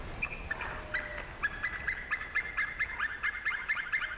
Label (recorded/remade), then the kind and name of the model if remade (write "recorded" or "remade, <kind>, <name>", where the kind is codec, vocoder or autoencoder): recorded